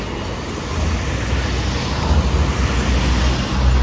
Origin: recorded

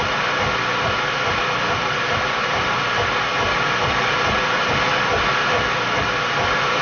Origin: recorded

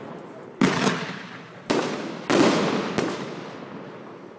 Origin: recorded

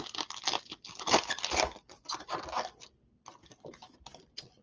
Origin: recorded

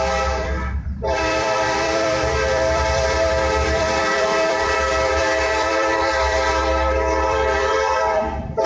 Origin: remade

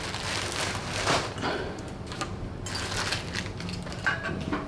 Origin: recorded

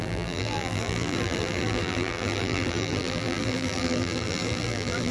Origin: remade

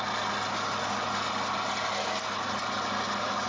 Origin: recorded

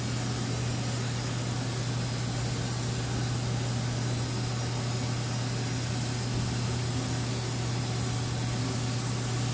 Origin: recorded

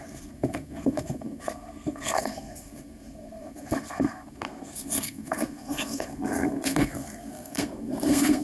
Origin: remade